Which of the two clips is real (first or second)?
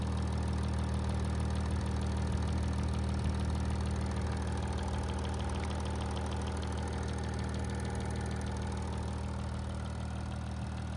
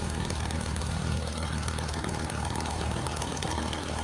first